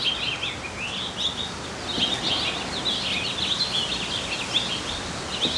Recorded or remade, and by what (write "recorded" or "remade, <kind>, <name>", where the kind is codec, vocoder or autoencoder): recorded